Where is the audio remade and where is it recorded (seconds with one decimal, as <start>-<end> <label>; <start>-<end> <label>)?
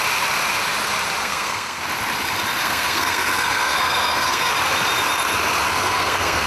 0.0-1.2 recorded; 1.2-1.8 remade; 1.8-2.6 recorded; 2.6-4.5 remade; 4.5-5.7 recorded; 5.7-6.5 remade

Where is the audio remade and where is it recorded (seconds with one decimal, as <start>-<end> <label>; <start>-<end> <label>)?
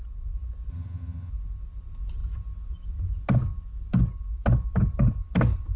0.0-0.7 recorded; 0.7-1.3 remade; 1.3-5.8 recorded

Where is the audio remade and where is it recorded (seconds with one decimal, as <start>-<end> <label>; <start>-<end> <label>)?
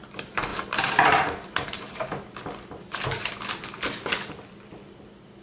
0.0-0.5 recorded; 0.5-1.9 remade; 1.9-5.4 recorded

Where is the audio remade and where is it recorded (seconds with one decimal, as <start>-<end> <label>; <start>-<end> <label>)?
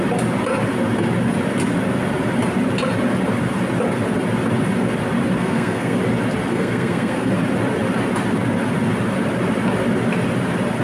0.0-5.4 recorded; 5.4-6.0 remade; 6.0-6.5 recorded; 6.5-7.3 remade; 7.3-10.8 recorded